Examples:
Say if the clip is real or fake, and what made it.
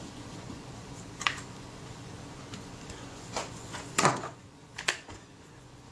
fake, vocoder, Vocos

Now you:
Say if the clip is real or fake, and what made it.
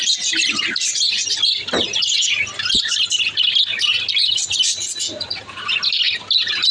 real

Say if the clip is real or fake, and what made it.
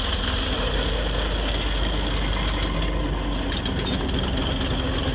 real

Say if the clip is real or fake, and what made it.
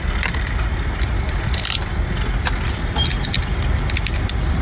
real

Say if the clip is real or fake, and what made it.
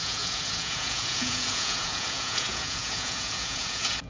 fake, vocoder, Vocos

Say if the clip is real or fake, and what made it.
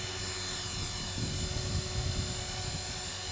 real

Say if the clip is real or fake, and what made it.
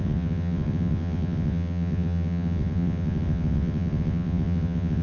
fake, vocoder, WaveNeXt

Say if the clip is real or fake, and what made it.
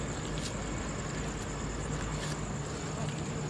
real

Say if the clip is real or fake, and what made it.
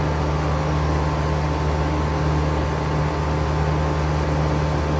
real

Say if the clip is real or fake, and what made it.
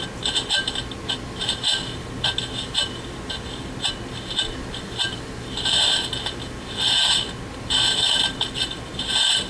real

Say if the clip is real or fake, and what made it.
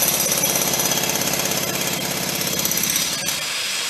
real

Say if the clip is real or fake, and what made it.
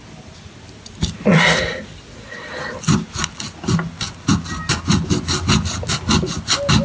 real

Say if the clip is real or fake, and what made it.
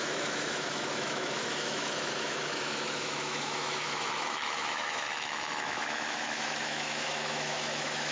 fake, autoencoder, DAC-VAE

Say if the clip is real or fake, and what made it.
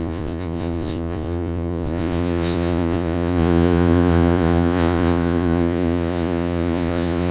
fake, vocoder, Vocos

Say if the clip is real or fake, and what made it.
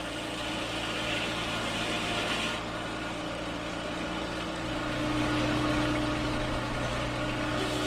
real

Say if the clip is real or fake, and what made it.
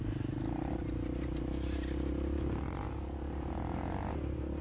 real